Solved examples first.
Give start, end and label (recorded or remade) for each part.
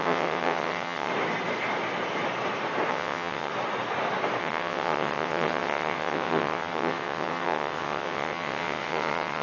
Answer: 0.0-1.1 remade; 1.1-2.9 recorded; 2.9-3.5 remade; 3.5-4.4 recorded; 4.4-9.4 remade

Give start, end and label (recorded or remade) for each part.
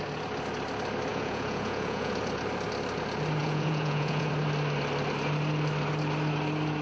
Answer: 0.0-1.1 recorded; 1.1-2.1 remade; 2.1-3.4 recorded; 3.4-4.3 remade; 4.3-6.8 recorded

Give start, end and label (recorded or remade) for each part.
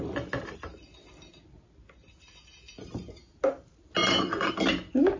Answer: 0.0-4.0 recorded; 4.0-4.5 remade; 4.5-5.2 recorded